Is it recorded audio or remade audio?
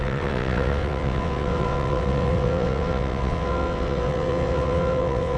remade